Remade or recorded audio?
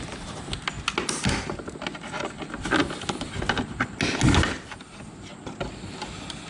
recorded